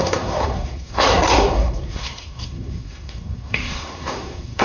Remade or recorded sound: remade